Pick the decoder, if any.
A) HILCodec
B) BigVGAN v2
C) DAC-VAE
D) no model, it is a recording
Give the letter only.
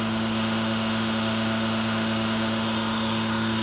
C